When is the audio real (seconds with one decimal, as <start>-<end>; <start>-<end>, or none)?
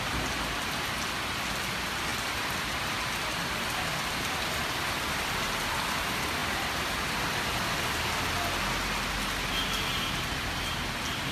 0.0-2.1; 5.2-11.3